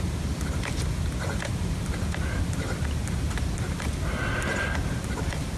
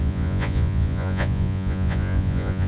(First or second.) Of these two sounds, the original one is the first